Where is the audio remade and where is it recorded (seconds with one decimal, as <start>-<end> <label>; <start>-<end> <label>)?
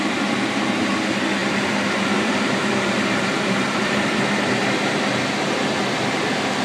0.0-1.4 recorded; 1.4-4.2 remade; 4.2-6.6 recorded